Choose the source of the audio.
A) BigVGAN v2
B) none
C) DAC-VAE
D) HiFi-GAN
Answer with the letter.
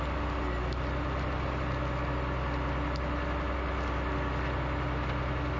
B